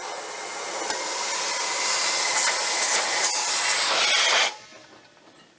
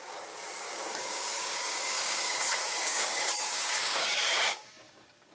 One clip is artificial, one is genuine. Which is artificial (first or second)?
second